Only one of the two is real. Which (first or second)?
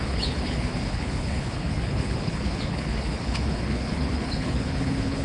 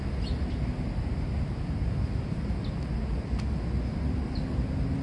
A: second